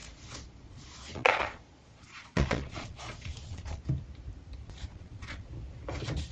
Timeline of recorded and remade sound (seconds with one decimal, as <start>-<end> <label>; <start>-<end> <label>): 0.0-3.8 remade; 3.8-4.9 recorded; 4.9-5.5 remade; 5.5-6.3 recorded